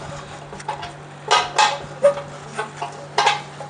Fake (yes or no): no